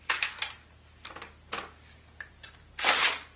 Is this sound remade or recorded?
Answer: recorded